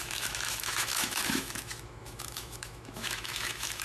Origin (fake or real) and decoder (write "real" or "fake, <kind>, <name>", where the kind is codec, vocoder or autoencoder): fake, autoencoder, DAC-VAE